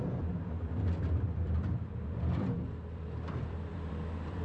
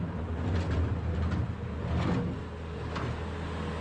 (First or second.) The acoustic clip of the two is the second